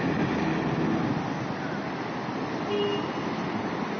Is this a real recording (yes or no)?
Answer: yes